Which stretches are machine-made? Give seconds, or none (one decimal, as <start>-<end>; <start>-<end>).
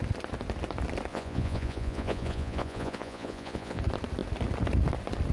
1.1-3.8